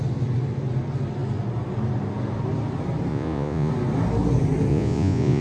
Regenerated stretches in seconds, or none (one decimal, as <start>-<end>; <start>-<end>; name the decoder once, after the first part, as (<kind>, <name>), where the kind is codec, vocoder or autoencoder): 3.1-3.7 (vocoder, Vocos); 4.7-5.4